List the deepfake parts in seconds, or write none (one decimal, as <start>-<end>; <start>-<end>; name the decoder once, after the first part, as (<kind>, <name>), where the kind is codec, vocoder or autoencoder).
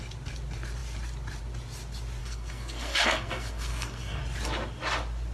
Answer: 2.2-4.2 (codec, SNAC)